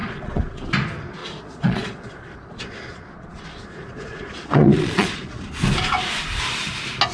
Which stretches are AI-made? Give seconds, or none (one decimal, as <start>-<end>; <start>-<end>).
0.0-0.7; 1.2-5.5

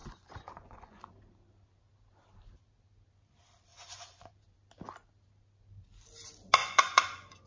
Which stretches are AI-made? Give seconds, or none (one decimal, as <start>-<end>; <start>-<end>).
0.0-1.1; 3.7-4.3; 6.6-7.5

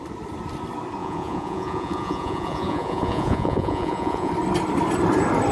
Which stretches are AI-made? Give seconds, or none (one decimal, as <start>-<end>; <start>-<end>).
1.0-4.3

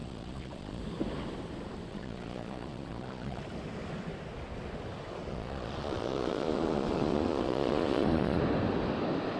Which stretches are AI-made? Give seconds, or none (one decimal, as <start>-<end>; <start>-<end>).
0.0-0.8; 1.9-3.4; 5.3-8.4